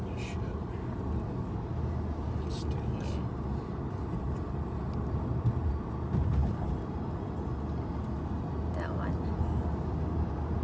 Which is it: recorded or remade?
recorded